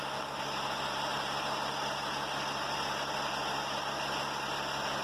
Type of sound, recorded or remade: recorded